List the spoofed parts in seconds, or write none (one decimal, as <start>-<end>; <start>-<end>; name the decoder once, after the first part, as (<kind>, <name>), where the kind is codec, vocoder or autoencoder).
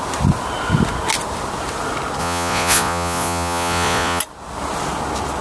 2.2-4.2 (vocoder, Vocos)